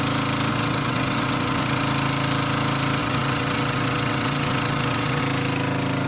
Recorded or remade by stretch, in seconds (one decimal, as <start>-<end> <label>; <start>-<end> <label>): 0.0-0.5 recorded; 0.5-1.8 remade; 1.8-3.0 recorded; 3.0-5.2 remade; 5.2-6.1 recorded